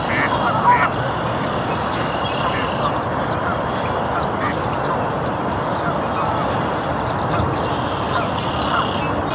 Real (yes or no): yes